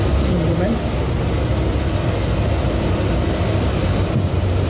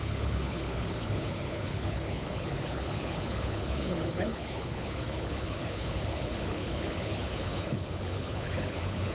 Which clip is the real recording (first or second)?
first